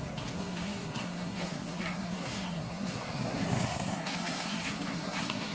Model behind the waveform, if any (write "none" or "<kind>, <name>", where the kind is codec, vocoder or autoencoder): codec, SNAC